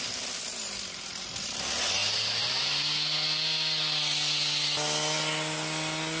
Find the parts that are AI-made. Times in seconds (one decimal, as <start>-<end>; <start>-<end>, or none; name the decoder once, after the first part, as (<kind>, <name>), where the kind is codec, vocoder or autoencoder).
none